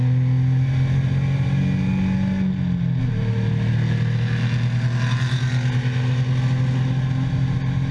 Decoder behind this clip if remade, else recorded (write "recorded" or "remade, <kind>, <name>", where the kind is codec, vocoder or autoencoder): recorded